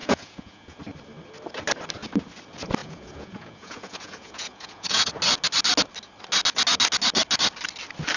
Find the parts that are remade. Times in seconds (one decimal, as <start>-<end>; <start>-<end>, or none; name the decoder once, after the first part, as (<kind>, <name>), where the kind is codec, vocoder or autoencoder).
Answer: 0.0-0.8 (vocoder, Vocos); 2.8-5.1